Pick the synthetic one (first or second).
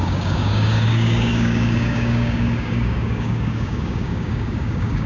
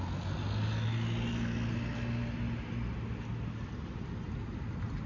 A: first